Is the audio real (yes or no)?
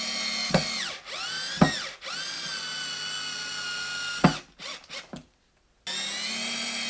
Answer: yes